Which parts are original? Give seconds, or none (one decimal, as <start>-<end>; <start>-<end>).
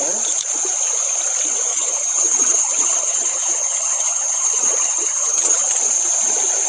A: 0.0-1.7; 5.7-6.7